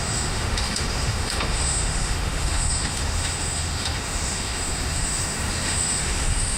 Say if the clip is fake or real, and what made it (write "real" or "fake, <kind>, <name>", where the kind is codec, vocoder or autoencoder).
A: fake, autoencoder, DAC-VAE